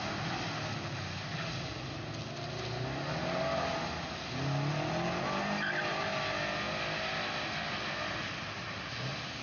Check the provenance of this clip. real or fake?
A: real